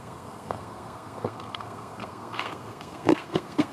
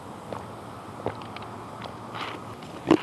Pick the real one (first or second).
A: second